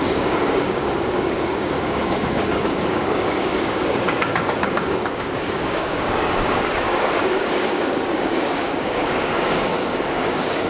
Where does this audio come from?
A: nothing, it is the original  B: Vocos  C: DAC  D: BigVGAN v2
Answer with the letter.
C